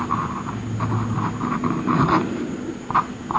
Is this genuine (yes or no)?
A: yes